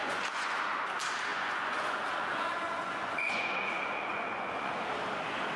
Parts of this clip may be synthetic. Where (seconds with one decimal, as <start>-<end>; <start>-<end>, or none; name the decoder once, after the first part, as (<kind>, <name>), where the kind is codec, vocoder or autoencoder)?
0.0-0.9 (vocoder, Vocos); 1.3-4.7